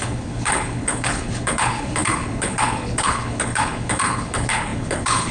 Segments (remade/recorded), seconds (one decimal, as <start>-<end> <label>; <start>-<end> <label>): 0.0-5.3 remade